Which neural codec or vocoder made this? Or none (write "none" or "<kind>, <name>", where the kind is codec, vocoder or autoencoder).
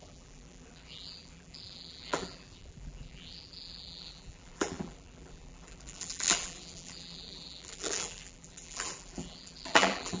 vocoder, BigVGAN v2